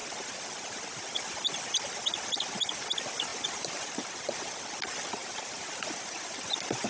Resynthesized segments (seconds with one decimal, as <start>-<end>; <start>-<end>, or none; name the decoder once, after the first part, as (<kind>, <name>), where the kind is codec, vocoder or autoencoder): 3.3-4.6 (vocoder, BigVGAN v2); 5.2-6.5